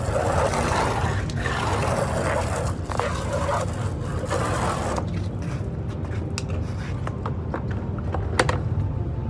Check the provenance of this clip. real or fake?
real